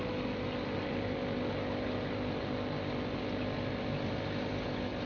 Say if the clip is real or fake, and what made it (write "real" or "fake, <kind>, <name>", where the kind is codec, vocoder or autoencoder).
real